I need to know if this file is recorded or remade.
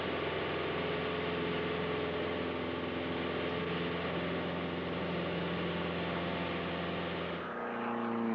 recorded